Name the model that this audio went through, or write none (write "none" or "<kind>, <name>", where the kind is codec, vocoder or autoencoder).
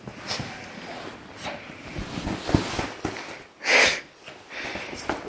none